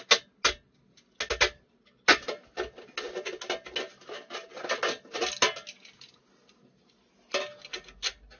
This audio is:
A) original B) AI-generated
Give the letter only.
A